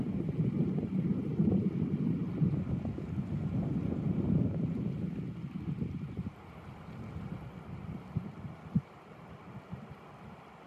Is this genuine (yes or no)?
yes